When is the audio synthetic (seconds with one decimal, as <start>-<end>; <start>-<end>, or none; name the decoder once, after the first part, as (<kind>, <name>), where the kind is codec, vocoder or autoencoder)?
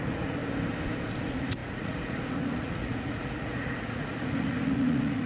0.0-0.4 (vocoder, Vocos); 1.2-5.3